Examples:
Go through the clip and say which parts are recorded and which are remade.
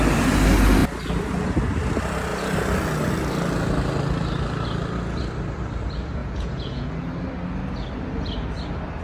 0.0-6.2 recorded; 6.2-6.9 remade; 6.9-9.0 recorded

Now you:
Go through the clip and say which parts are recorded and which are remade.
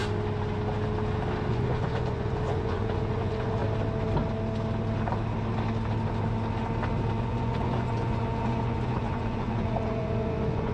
0.0-1.5 recorded; 1.5-3.6 remade; 3.6-7.2 recorded; 7.2-10.7 remade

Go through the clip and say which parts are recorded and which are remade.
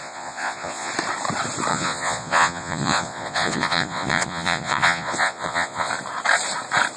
0.0-0.9 remade; 0.9-1.7 recorded; 1.7-5.9 remade; 5.9-7.0 recorded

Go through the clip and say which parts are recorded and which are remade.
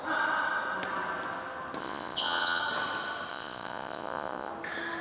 0.0-1.8 recorded; 1.8-2.6 remade; 2.6-3.3 recorded; 3.3-4.5 remade; 4.5-5.0 recorded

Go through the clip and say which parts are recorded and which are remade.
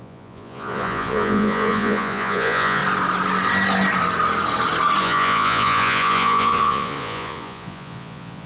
0.0-2.8 remade; 2.8-5.0 recorded; 5.0-8.5 remade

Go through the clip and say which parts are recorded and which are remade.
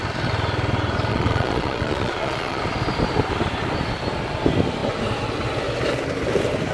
0.0-1.1 recorded; 1.1-2.6 remade; 2.6-6.7 recorded